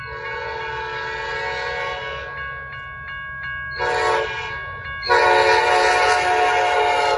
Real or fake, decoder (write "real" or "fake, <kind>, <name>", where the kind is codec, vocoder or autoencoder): real